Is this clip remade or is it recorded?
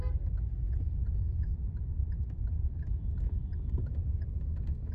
recorded